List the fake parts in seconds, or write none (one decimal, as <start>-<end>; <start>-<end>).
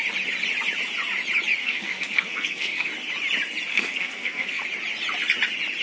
1.6-2.9; 3.7-4.6